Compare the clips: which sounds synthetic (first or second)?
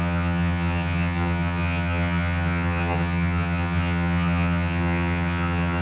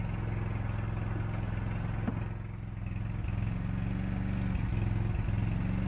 first